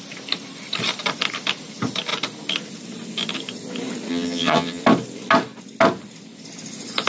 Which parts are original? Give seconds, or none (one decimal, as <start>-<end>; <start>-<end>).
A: 0.0-4.1; 4.8-7.1